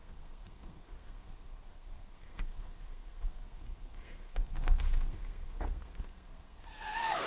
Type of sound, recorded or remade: remade